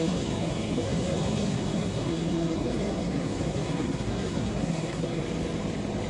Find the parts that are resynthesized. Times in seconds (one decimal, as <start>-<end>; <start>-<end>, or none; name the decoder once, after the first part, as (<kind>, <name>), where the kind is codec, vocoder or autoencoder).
0.0-5.2 (codec, SNAC)